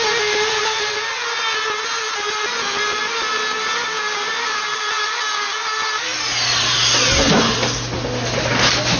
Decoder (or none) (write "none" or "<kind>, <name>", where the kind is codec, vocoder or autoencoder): none